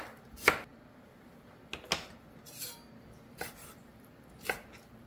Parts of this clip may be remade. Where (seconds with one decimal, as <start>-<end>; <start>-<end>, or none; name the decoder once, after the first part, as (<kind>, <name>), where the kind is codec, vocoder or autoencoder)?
none